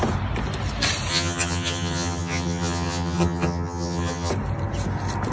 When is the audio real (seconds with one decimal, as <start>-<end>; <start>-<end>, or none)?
0.0-1.1; 4.3-5.3